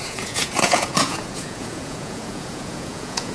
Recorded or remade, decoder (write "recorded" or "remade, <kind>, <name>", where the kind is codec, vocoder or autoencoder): remade, vocoder, Vocos